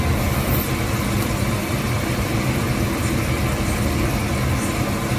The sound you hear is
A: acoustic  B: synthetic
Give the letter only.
A